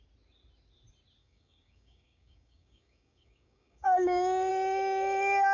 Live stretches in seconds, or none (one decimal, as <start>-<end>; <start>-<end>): 0.0-1.2; 4.5-5.5